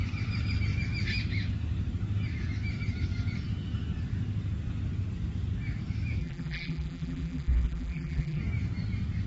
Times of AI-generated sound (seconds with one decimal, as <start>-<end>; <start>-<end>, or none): 6.2-8.4